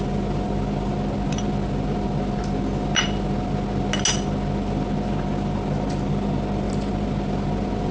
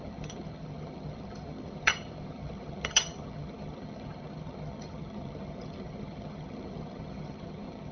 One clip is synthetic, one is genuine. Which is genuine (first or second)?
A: first